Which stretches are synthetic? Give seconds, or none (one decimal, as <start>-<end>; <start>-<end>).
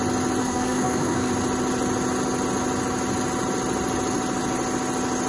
0.4-1.3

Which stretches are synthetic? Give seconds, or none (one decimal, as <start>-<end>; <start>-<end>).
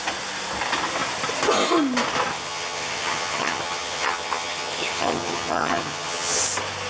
2.3-6.4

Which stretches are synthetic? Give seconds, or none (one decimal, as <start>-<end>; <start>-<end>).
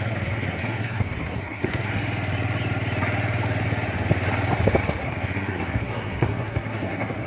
0.0-1.9; 5.0-7.3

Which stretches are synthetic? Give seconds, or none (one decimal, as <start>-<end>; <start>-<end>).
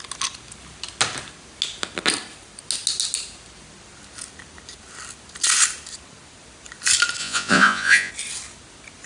7.2-8.1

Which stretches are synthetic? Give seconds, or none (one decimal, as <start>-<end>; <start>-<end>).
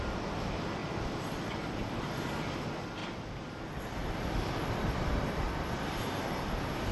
0.8-1.8; 3.0-3.5; 4.0-6.1